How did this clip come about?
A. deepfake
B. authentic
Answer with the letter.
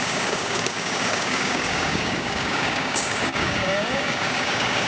A